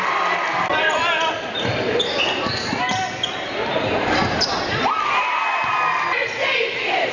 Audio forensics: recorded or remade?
recorded